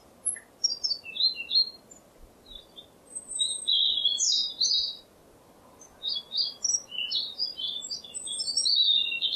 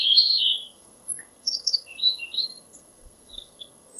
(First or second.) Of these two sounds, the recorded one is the first